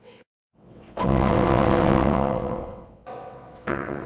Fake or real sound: fake